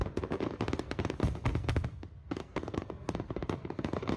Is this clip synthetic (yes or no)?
yes